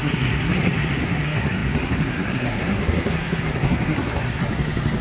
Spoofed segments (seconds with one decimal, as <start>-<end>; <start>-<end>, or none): 0.0-4.4